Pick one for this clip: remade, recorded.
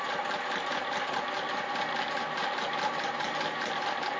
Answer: recorded